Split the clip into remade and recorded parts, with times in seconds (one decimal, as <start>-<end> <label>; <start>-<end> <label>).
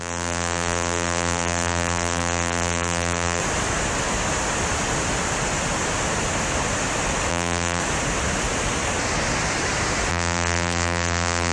0.0-3.4 remade; 3.4-7.3 recorded; 7.3-7.8 remade; 7.8-10.1 recorded; 10.1-11.5 remade